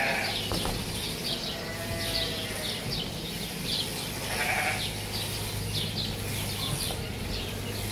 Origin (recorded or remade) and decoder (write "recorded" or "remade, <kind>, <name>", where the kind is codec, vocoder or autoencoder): recorded